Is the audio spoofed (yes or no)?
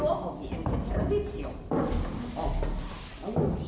no